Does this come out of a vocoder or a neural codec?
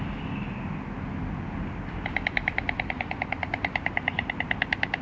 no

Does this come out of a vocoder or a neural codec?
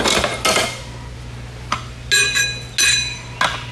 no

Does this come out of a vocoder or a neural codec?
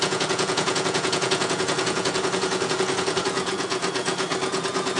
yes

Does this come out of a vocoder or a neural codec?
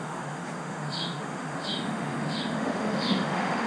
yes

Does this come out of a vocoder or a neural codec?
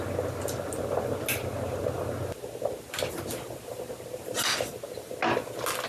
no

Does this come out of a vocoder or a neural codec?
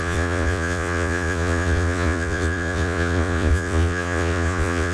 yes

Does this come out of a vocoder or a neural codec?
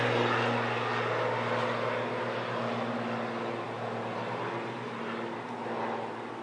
no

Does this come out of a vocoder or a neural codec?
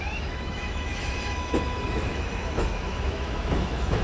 yes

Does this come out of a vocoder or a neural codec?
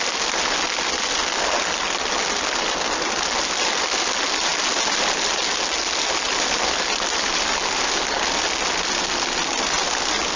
no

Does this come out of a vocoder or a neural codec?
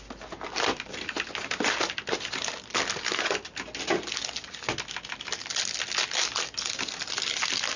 no